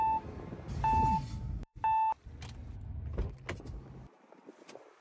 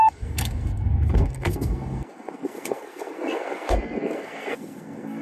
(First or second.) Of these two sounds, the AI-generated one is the second